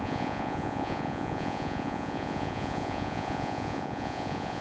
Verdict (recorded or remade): remade